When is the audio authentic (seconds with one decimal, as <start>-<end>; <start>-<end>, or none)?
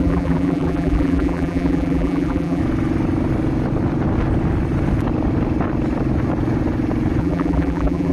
2.6-7.2